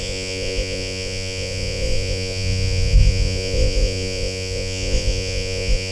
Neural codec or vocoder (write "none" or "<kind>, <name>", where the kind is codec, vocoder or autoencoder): vocoder, Vocos